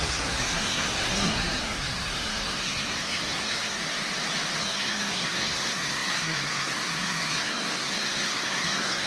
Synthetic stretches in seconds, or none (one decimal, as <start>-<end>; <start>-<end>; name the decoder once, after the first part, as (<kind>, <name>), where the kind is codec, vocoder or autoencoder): 0.0-3.8 (codec, SNAC); 4.6-9.1